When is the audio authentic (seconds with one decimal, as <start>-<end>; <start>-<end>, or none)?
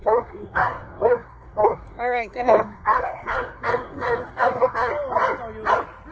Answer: 4.9-6.1